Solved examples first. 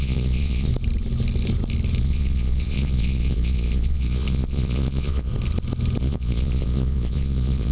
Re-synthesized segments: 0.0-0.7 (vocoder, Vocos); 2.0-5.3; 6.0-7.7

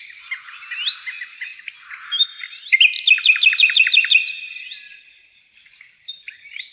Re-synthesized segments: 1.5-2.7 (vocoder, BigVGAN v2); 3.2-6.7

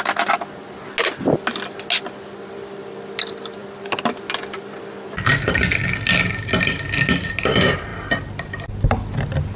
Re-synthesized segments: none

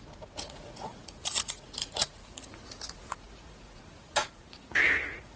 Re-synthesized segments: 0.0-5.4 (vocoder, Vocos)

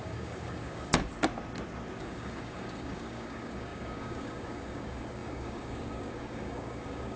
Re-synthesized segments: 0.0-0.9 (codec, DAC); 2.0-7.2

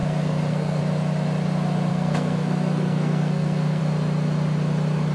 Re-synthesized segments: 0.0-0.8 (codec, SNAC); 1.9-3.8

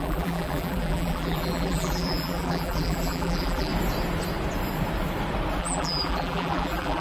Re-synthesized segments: 0.0-3.7 (vocoder, BigVGAN v2); 5.6-7.0